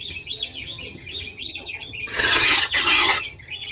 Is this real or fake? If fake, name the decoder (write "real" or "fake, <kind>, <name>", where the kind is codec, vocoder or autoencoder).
fake, vocoder, HiFi-GAN